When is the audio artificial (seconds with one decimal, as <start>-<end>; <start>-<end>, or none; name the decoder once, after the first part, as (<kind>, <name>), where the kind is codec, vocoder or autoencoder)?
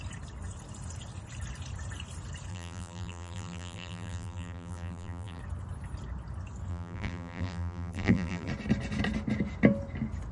2.5-5.4 (vocoder, BigVGAN v2); 6.7-8.5